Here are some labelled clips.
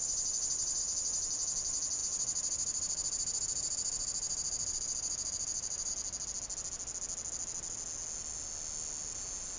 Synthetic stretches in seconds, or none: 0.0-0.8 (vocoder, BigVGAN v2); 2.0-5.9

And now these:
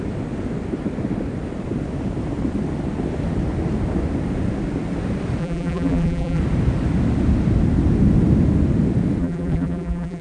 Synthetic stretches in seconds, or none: 5.4-6.4 (vocoder, BigVGAN v2); 9.2-10.2

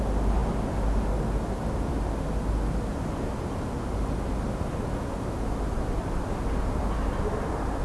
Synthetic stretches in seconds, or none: none